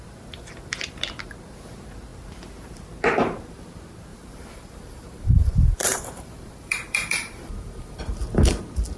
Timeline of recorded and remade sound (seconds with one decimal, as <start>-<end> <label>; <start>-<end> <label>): 0.0-4.1 recorded; 4.1-8.0 remade; 8.0-9.0 recorded